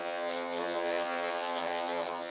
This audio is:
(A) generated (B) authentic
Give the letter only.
A